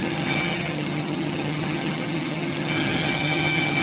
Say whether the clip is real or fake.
fake